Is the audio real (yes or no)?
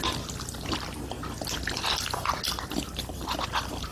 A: yes